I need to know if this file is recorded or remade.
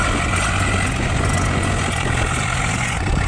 remade